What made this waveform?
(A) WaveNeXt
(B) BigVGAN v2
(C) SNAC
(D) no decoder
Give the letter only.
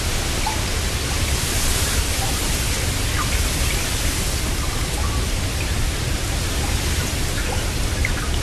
D